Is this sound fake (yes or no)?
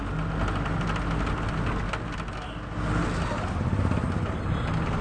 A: no